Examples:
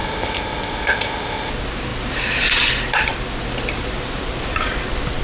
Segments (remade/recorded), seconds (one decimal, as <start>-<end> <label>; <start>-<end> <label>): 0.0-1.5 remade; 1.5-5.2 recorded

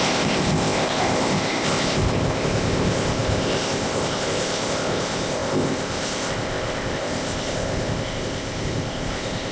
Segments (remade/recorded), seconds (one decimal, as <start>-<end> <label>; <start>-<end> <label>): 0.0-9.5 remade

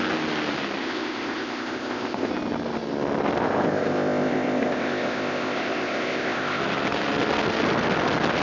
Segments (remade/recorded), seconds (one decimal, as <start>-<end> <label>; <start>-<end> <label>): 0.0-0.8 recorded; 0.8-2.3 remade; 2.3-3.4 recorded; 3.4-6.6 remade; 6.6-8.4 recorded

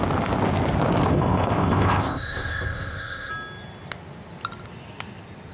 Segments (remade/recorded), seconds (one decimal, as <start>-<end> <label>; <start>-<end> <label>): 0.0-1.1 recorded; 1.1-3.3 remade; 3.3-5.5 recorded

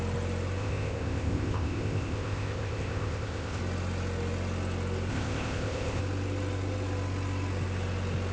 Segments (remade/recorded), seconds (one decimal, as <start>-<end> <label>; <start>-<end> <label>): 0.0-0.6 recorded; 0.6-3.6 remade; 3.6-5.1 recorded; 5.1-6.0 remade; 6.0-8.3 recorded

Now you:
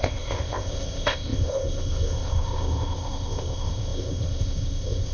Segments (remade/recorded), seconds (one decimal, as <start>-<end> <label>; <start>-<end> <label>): 0.0-5.1 remade